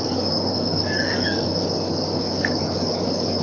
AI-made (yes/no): yes